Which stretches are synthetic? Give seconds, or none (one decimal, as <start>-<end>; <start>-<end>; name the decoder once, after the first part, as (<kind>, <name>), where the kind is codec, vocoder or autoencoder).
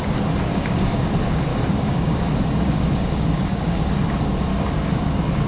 0.5-1.0 (codec, DAC); 1.5-3.9; 4.5-5.1